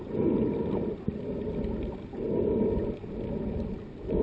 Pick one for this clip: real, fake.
real